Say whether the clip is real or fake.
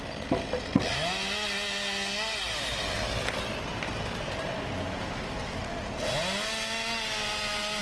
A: real